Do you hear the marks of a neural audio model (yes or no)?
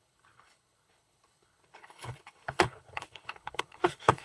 yes